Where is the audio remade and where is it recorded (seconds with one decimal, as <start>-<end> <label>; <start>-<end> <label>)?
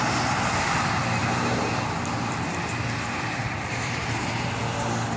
0.0-1.2 recorded; 1.2-1.7 remade; 1.7-3.4 recorded; 3.4-4.6 remade; 4.6-5.2 recorded